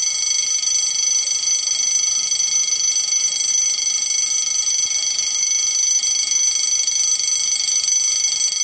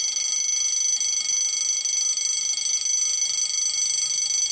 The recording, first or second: second